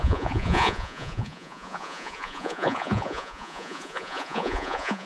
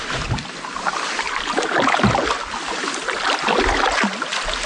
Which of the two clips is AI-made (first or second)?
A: first